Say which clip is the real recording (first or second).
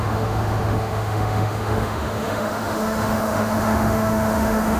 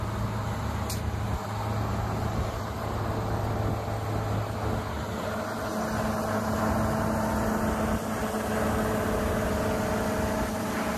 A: second